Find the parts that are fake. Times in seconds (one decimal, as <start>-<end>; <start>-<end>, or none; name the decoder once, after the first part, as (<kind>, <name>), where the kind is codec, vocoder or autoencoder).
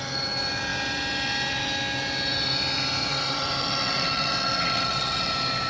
3.0-5.3 (vocoder, WaveNeXt)